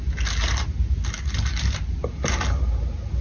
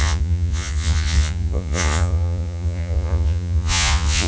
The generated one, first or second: second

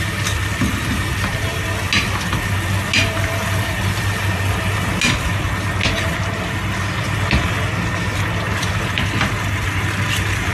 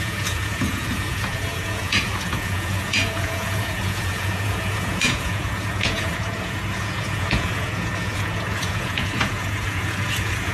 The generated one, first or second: second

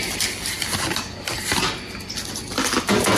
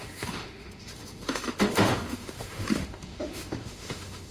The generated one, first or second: second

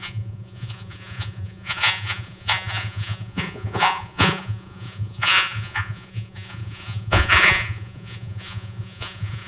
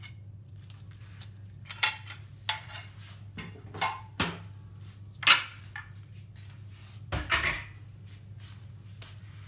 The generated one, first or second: first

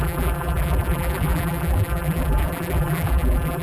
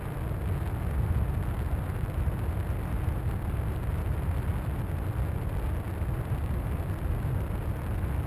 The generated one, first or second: first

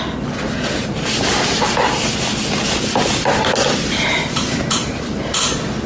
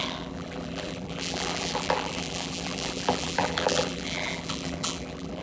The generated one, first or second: second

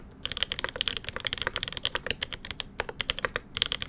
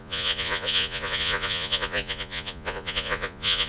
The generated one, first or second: second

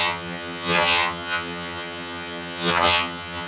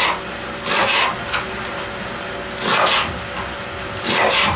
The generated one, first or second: first